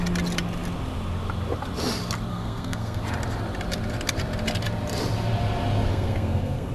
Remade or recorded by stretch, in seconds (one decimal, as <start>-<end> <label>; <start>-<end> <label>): 0.0-2.3 recorded; 2.3-3.0 remade; 3.0-5.9 recorded; 5.9-6.7 remade